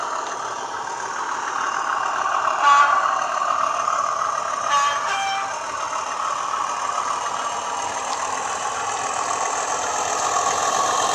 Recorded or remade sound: recorded